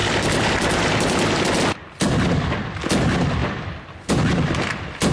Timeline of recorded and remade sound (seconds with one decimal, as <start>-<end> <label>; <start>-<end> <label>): 0.0-1.6 remade; 1.6-3.4 recorded; 3.4-4.1 remade; 4.1-5.1 recorded